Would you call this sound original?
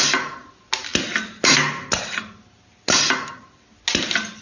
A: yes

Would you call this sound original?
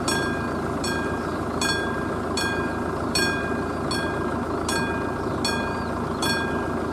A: yes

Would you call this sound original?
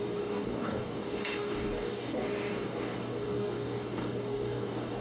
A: no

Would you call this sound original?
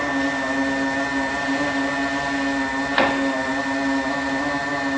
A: yes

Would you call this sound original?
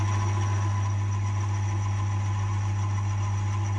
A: yes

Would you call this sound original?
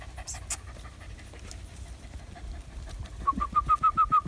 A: yes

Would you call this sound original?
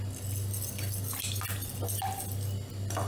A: yes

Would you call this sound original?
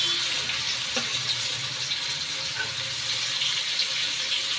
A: yes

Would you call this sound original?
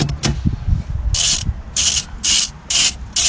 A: yes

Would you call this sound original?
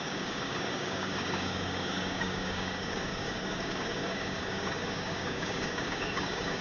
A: no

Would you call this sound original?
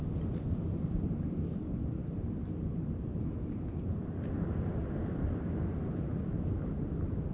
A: yes